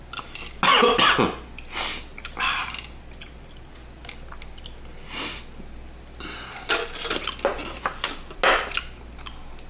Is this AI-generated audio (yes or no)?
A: no